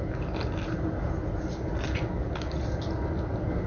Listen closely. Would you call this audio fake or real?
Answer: real